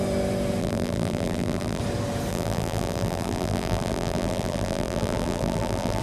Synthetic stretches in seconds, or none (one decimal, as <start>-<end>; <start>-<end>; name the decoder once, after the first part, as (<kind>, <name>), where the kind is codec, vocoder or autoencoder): 0.6-1.8 (vocoder, BigVGAN v2); 2.3-6.0